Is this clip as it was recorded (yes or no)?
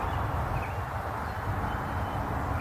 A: yes